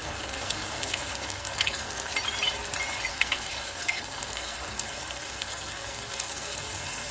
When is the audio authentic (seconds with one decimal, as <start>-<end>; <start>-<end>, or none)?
2.1-3.1